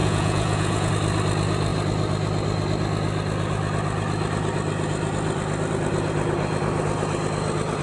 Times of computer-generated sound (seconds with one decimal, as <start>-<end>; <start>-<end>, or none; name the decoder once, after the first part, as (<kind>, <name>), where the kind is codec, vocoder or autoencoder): 0.0-0.9 (vocoder, Vocos)